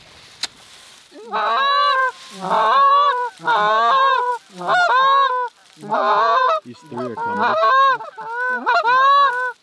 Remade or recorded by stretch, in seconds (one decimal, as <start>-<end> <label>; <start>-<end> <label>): 0.0-2.0 recorded; 2.0-4.3 remade; 4.3-5.6 recorded; 5.6-7.7 remade; 7.7-9.6 recorded